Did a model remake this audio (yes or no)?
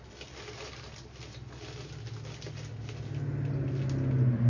no